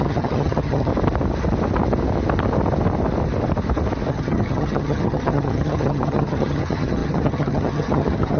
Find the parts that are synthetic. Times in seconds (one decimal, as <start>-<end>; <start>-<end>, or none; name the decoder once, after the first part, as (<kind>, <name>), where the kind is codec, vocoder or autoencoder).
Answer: 0.0-0.9 (vocoder, HiFi-GAN); 4.1-8.4